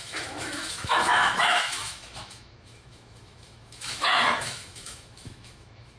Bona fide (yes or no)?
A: no